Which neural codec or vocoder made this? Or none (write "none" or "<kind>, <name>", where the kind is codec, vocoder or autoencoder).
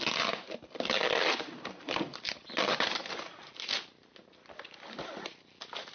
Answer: none